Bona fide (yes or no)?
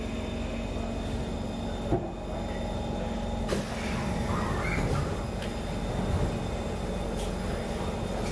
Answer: yes